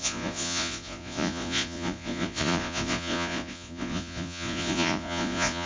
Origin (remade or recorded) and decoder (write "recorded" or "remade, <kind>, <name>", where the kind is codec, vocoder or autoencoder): remade, vocoder, Vocos